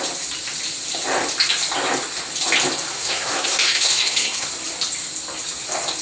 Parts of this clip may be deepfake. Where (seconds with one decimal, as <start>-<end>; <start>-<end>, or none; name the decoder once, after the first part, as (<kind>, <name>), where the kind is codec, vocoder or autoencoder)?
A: 2.9-4.5 (codec, SNAC)